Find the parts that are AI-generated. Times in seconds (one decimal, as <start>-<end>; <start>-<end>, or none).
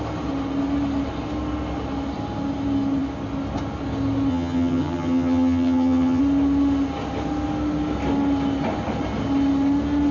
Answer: 4.3-6.2